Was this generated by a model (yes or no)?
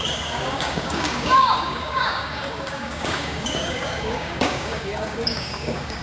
yes